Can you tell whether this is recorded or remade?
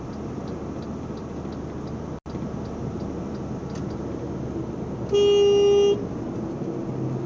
recorded